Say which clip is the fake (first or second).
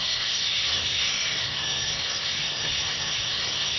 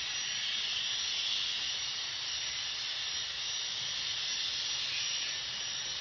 first